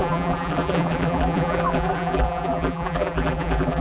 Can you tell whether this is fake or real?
fake